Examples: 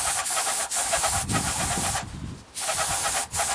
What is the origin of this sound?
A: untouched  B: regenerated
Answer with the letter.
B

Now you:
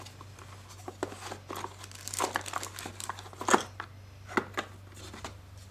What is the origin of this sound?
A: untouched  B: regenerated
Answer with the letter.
A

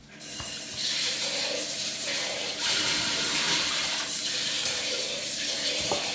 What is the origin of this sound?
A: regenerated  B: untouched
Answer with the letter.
A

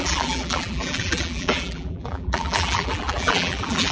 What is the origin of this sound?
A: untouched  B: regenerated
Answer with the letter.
B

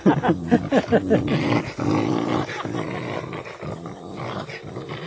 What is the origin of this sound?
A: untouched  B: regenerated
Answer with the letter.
A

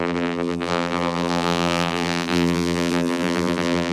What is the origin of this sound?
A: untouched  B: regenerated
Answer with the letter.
B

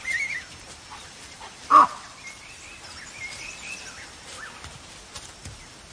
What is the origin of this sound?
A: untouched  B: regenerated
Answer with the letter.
A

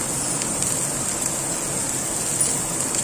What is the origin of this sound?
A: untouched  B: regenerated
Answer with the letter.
A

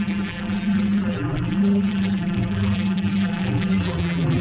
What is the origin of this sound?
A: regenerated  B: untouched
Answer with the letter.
A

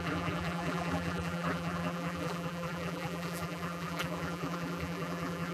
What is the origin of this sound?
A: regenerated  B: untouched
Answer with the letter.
A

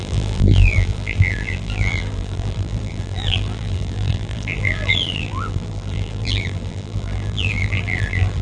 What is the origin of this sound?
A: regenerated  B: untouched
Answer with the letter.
A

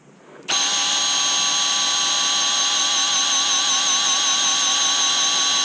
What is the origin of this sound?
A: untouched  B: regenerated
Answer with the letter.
A